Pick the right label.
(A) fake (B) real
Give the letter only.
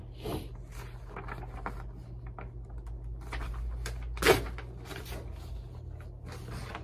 B